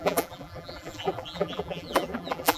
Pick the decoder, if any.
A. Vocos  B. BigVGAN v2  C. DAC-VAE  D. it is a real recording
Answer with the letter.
B